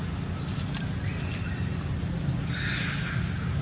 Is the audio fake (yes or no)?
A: no